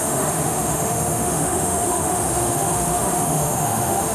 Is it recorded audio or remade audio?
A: remade